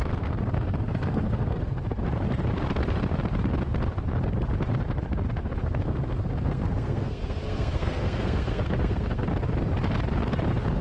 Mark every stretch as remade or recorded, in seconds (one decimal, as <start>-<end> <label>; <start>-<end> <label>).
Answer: 0.0-1.7 remade; 1.7-5.6 recorded; 5.6-9.3 remade; 9.3-10.8 recorded